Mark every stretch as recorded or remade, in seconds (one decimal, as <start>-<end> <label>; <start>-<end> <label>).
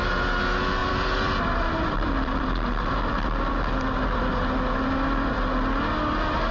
0.0-0.8 recorded; 0.8-2.4 remade; 2.4-6.5 recorded